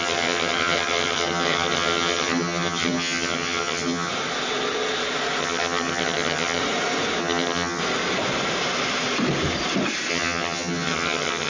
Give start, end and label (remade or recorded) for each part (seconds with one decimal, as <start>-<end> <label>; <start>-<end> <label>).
0.0-4.1 remade; 4.1-5.4 recorded; 5.4-6.6 remade; 6.6-7.2 recorded; 7.2-7.8 remade; 7.8-10.1 recorded; 10.1-11.5 remade